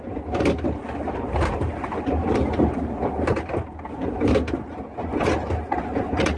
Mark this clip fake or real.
real